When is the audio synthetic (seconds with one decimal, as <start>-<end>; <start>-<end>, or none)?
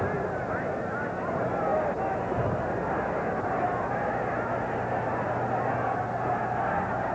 none